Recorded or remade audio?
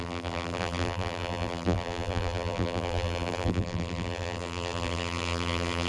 remade